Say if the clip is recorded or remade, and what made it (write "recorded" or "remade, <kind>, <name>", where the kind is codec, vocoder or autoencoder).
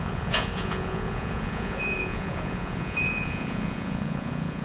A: remade, vocoder, Vocos